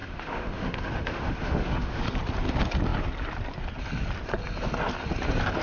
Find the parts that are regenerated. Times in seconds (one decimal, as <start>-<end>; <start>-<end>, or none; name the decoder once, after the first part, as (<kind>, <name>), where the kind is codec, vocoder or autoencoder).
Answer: 0.0-2.0 (autoencoder, DAC-VAE)